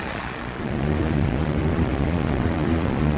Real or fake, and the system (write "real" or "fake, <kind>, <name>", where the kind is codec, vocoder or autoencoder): fake, vocoder, Vocos